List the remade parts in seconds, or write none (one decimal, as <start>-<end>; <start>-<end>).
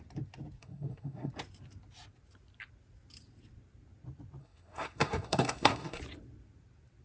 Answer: 0.6-1.3; 4.4-6.0